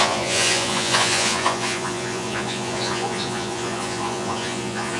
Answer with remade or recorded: remade